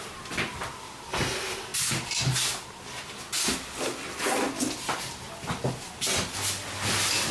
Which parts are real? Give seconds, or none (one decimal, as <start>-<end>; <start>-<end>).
0.0-7.3